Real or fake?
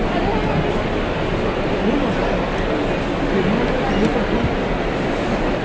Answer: real